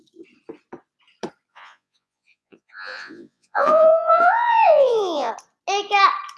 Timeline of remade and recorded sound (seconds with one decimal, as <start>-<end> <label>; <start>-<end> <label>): 0.0-1.5 recorded; 1.5-5.3 remade; 5.3-6.4 recorded